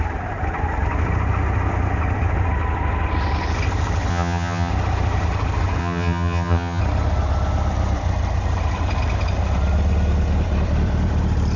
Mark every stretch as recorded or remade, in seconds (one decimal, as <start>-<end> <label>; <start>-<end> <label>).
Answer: 0.0-4.1 recorded; 4.1-4.7 remade; 4.7-5.8 recorded; 5.8-6.8 remade; 6.8-11.6 recorded